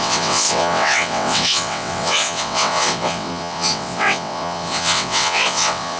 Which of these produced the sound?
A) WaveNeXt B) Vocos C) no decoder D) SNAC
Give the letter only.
A